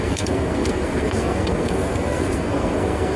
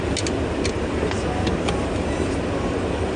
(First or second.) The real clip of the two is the second